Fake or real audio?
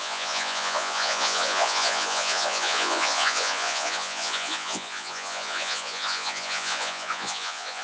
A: fake